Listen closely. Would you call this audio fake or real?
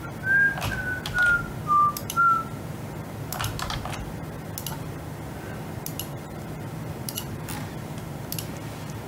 real